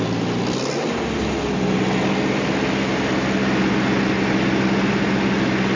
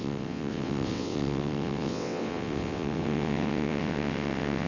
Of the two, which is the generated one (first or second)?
second